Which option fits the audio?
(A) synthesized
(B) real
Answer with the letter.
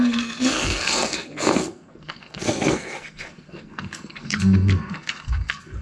A